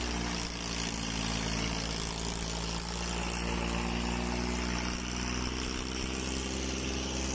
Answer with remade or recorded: recorded